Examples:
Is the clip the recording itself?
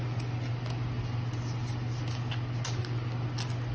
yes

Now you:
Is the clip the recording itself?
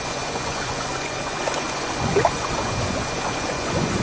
no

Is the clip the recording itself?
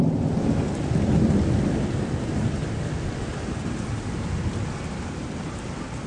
yes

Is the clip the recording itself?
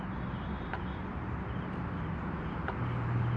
no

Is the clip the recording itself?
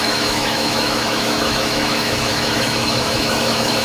no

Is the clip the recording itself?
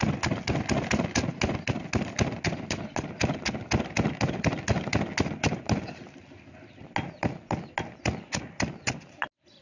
yes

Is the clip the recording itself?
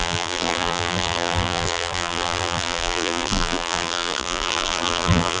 no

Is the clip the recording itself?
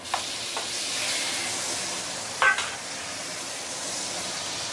yes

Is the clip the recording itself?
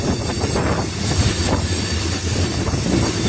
yes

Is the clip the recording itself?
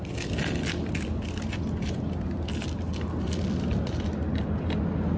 yes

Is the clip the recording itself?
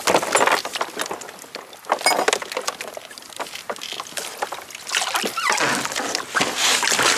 yes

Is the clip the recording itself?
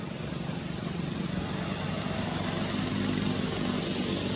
yes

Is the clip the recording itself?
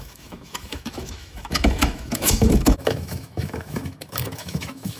no